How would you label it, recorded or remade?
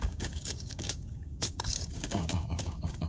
remade